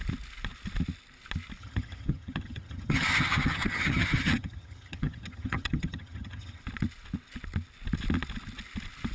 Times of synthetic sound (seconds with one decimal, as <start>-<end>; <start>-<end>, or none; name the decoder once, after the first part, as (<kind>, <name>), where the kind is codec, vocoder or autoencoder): 1.6-6.6 (vocoder, HiFi-GAN)